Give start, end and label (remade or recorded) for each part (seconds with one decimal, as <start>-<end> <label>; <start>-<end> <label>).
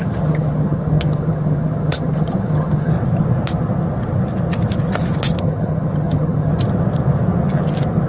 0.0-2.9 remade; 2.9-5.4 recorded; 5.4-6.5 remade; 6.5-8.1 recorded